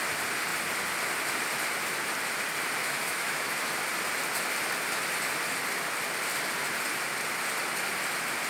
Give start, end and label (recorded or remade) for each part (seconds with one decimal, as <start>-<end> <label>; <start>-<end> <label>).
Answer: 0.0-2.8 recorded; 2.8-3.5 remade; 3.5-8.5 recorded